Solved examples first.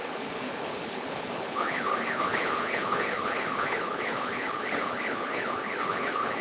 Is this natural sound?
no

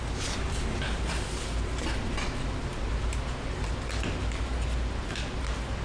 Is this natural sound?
yes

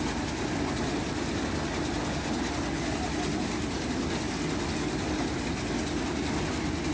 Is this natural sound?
yes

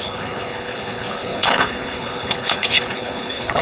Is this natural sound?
no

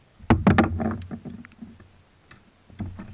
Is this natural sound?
yes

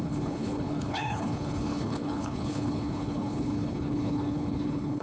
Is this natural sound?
no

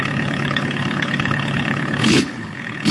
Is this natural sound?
no